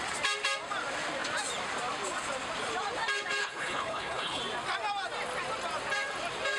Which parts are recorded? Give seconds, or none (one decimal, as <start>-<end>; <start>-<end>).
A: 0.0-3.4; 4.4-6.6